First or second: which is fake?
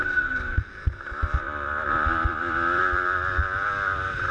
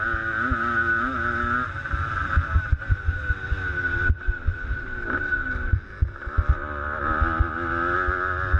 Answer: first